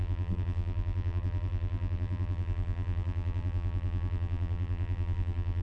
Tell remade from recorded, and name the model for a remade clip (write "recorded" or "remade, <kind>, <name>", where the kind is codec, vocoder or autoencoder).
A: remade, vocoder, BigVGAN v2